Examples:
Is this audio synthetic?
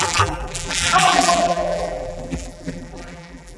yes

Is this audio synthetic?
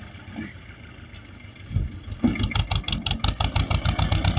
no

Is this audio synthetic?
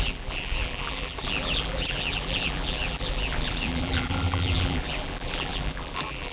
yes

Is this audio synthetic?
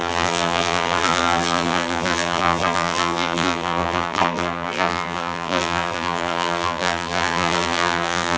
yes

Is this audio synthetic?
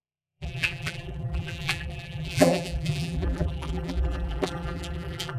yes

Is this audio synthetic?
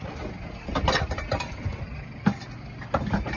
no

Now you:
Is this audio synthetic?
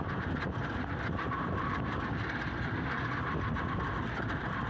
yes